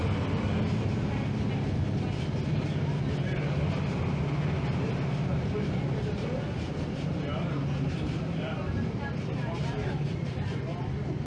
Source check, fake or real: real